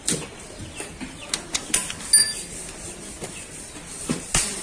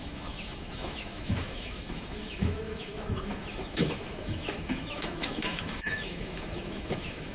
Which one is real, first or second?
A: first